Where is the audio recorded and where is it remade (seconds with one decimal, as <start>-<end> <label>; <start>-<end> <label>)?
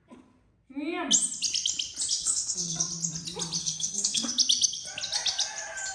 0.0-2.2 recorded; 2.2-2.8 remade; 2.8-3.6 recorded; 3.6-4.3 remade; 4.3-5.9 recorded